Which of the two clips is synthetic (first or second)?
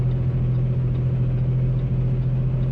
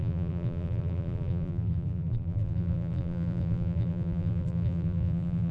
second